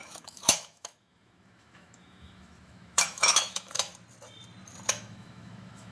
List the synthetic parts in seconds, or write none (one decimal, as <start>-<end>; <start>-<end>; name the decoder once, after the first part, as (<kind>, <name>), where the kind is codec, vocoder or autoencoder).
0.0-3.9 (autoencoder, DAC-VAE); 4.9-5.9